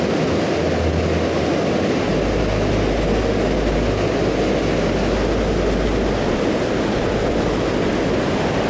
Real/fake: real